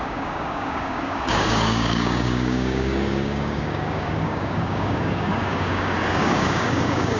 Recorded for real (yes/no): no